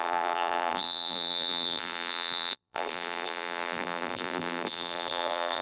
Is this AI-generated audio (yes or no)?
yes